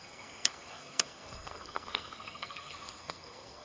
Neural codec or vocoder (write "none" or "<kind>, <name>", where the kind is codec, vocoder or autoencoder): codec, SNAC